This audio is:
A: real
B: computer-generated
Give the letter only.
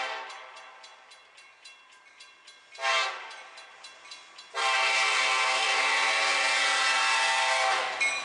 A